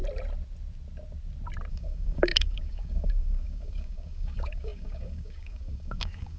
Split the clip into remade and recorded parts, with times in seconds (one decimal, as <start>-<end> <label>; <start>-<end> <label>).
0.0-1.7 recorded; 1.7-6.4 remade